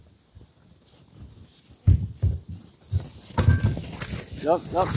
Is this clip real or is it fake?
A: real